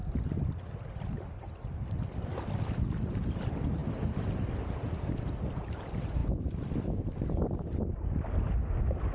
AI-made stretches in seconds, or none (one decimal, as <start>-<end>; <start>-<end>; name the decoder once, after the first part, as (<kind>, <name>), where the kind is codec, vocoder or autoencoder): none